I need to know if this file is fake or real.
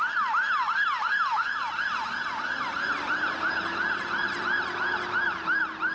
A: real